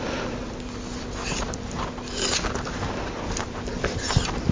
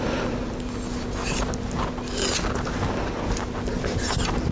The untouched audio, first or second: second